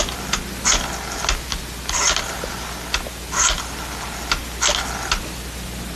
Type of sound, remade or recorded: recorded